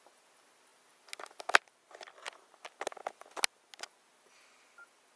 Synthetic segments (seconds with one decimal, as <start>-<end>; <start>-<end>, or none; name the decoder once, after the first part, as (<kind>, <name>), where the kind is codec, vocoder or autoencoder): none